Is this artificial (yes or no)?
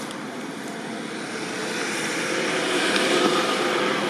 yes